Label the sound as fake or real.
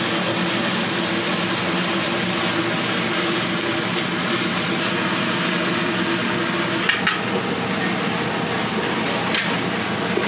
real